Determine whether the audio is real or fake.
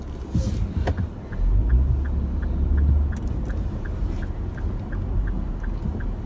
real